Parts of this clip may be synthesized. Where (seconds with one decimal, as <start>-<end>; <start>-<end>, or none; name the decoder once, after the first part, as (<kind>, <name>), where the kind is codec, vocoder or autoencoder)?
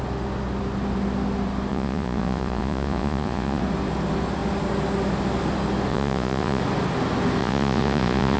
1.7-3.6 (vocoder, Vocos); 5.9-6.6; 7.4-8.4